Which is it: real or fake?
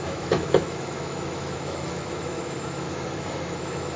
fake